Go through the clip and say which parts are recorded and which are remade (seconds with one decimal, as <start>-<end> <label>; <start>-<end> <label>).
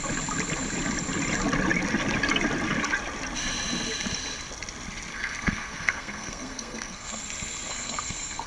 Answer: 0.0-5.1 recorded; 5.1-7.2 remade; 7.2-7.7 recorded; 7.7-8.5 remade